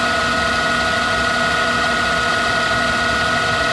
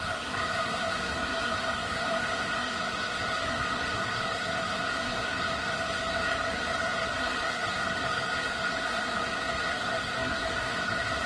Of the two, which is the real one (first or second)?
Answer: first